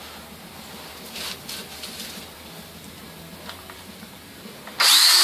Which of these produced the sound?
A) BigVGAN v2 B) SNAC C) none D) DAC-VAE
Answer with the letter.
C